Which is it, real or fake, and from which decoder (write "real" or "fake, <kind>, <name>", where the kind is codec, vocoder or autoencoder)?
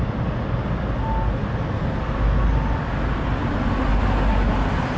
real